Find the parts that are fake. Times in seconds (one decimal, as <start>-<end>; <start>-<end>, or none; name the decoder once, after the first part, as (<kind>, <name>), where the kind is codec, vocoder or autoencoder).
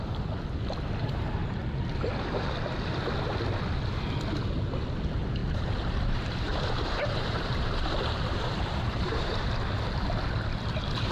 1.0-1.6 (vocoder, BigVGAN v2); 5.4-9.5